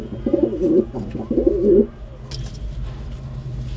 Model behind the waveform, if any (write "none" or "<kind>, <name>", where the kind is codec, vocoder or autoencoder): none